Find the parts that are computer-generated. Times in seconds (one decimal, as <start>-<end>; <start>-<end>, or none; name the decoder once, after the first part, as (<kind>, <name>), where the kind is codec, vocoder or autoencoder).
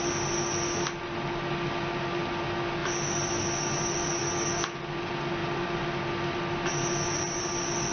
none